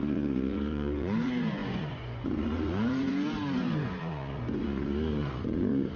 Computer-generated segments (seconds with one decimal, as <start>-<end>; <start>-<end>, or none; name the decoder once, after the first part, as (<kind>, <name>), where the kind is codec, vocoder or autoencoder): 0.0-6.0 (vocoder, Vocos)